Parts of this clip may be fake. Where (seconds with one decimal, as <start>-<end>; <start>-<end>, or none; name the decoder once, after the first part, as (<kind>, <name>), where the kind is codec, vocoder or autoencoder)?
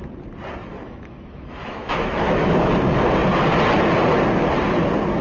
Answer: 0.7-2.7 (autoencoder, DAC-VAE)